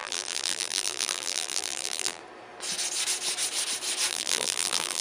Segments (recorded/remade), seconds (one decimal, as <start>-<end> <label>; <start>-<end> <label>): 0.0-2.2 remade; 2.2-4.1 recorded; 4.1-5.0 remade

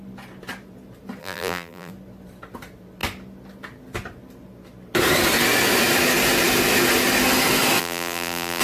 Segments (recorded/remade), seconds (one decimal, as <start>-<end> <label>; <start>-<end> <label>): 0.0-1.2 recorded; 1.2-1.9 remade; 1.9-7.8 recorded; 7.8-8.6 remade

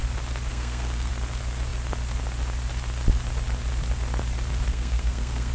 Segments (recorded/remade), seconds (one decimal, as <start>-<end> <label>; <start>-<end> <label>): 0.0-0.5 recorded; 0.5-1.1 remade; 1.1-4.7 recorded; 4.7-5.5 remade